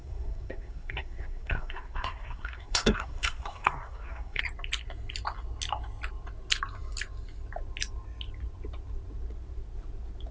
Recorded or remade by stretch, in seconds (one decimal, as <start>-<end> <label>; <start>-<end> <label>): 0.0-4.4 remade; 4.4-10.3 recorded